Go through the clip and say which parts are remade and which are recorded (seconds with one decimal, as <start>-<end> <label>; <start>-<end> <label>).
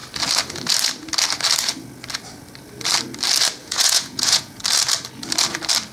0.0-3.6 recorded; 3.6-4.6 remade; 4.6-5.9 recorded